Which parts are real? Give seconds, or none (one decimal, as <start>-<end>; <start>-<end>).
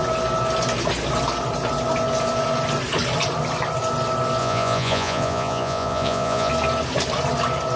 0.0-4.4; 6.5-7.8